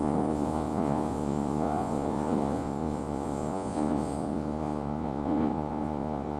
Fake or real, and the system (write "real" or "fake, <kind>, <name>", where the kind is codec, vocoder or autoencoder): fake, vocoder, Vocos